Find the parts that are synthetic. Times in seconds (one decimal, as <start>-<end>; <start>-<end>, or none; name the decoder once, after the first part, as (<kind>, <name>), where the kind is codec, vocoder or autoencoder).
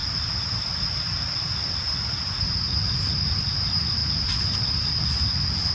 none